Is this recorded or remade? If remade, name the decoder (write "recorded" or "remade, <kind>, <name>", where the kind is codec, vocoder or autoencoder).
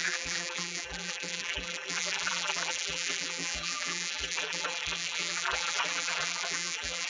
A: remade, vocoder, BigVGAN v2